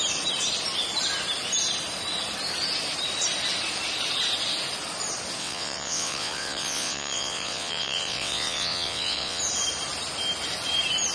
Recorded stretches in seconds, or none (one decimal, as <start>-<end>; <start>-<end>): 0.0-5.4; 9.4-11.1

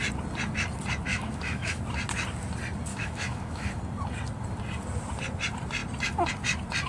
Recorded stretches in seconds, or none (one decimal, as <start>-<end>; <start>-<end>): 0.0-1.1; 1.8-2.9; 3.8-6.9